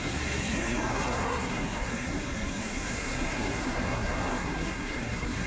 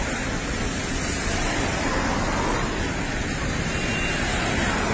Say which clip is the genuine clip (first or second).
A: second